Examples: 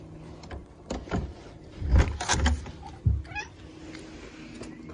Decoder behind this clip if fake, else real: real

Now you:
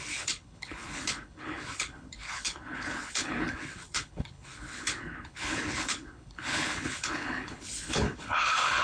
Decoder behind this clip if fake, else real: fake, codec, HILCodec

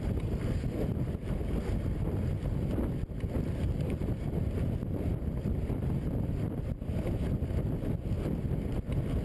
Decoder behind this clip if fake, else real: real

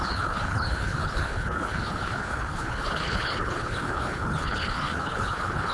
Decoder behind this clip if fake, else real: fake, codec, HILCodec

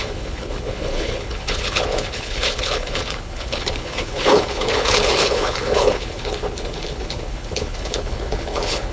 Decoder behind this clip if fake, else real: fake, codec, HILCodec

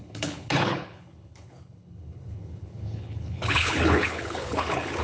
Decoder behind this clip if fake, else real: fake, codec, HILCodec